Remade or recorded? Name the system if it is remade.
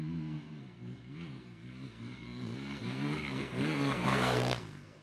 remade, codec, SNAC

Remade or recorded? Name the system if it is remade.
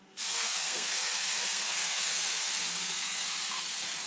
remade, codec, SNAC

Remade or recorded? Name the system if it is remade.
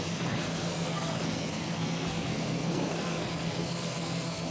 remade, codec, SNAC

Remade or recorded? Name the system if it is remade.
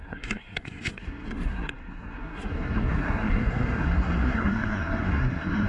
remade, codec, SNAC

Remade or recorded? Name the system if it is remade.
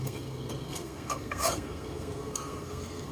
remade, codec, SNAC